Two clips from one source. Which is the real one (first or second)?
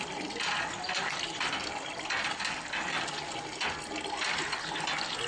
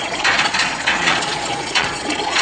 first